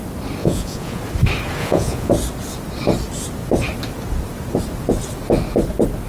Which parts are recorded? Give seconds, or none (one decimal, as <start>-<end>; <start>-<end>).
0.0-0.4; 1.0-1.6; 2.1-6.1